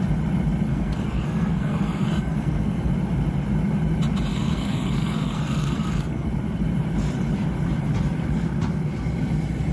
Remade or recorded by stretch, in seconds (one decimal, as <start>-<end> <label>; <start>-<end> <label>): 0.0-0.7 recorded; 0.7-2.9 remade; 2.9-4.3 recorded; 4.3-6.3 remade; 6.3-9.7 recorded